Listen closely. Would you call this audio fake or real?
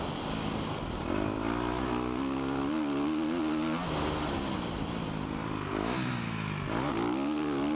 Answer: real